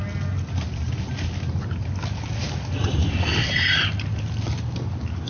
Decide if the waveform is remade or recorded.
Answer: recorded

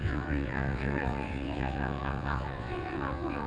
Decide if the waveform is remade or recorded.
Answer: remade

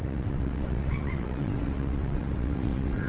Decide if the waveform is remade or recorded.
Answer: remade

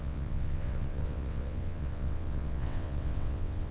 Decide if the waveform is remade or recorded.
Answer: remade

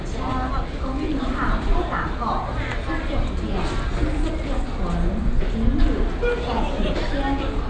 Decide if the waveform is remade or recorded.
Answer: recorded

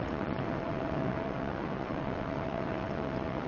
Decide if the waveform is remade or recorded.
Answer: remade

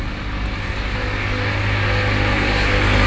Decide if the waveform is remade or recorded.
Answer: recorded